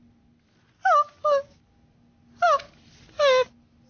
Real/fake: real